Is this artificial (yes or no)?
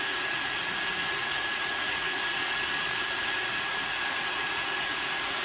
yes